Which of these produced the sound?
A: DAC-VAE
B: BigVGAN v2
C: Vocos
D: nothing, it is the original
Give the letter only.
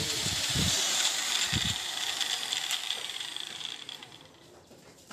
B